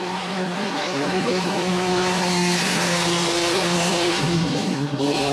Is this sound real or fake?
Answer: fake